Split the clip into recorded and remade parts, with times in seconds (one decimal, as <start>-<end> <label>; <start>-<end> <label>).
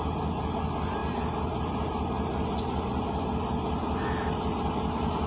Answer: 0.0-5.3 recorded